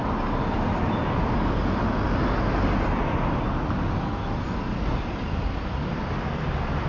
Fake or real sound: real